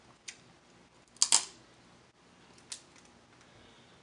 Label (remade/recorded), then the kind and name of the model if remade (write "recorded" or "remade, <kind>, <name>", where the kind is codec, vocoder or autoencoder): recorded